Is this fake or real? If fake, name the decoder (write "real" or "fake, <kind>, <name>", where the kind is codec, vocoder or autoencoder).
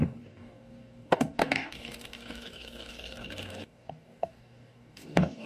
fake, codec, DAC